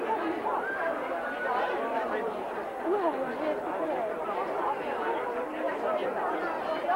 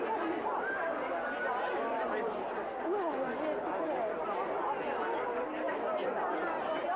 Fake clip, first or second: first